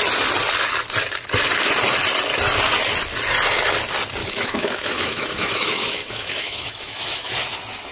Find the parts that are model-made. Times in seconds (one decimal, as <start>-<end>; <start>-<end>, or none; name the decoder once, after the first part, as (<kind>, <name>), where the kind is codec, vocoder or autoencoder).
4.2-7.3 (autoencoder, DAC-VAE)